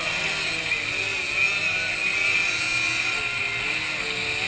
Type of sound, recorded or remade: recorded